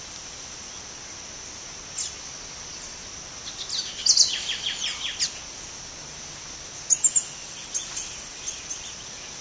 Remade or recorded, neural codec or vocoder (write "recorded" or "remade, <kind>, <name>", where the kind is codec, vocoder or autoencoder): recorded